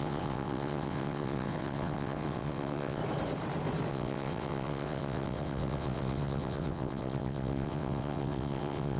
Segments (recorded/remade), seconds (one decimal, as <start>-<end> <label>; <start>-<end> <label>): 0.0-3.0 remade; 3.0-3.9 recorded; 3.9-9.0 remade